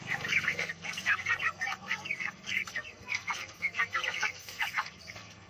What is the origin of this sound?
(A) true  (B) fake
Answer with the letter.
B